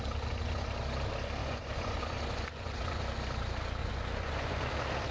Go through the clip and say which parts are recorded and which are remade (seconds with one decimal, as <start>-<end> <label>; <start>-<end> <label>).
0.0-1.4 recorded; 1.4-3.0 remade; 3.0-3.8 recorded; 3.8-4.6 remade; 4.6-5.1 recorded